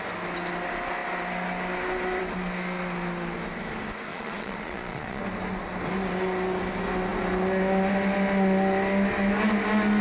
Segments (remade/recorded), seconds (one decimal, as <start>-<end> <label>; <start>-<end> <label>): 0.0-4.1 recorded; 4.1-5.2 remade; 5.2-10.0 recorded